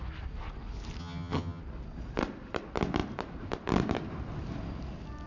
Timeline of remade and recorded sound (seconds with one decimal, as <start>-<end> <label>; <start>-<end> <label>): 0.0-1.0 recorded; 1.0-1.6 remade; 1.6-5.3 recorded